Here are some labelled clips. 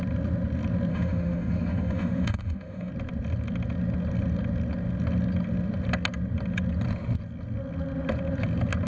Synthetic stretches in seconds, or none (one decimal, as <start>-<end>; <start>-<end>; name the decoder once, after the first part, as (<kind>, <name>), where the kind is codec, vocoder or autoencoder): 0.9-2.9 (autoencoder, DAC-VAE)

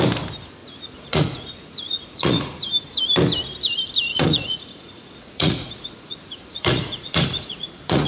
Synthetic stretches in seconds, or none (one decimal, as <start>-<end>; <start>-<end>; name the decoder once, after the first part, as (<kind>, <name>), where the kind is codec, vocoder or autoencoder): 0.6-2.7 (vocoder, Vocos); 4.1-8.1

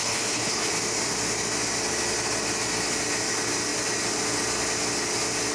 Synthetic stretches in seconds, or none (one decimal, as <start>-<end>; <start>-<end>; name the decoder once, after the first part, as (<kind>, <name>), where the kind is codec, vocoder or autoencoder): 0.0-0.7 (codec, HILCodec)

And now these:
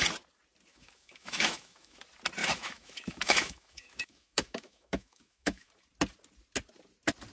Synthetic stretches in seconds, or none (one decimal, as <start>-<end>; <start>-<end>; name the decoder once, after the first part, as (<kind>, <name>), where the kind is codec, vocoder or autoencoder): 0.7-2.0 (autoencoder, DAC-VAE); 2.4-5.7